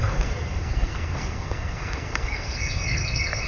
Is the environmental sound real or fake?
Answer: fake